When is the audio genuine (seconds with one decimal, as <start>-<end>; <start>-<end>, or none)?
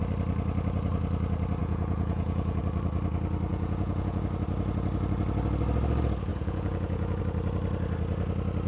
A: 0.0-1.6; 2.6-3.5; 4.2-6.3; 7.2-8.7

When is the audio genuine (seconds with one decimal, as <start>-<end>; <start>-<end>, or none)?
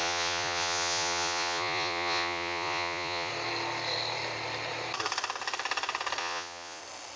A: 3.3-6.2; 6.8-7.2